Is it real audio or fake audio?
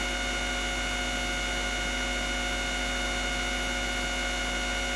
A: real